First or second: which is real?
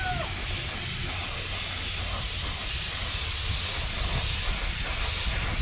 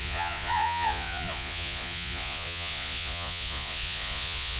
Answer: first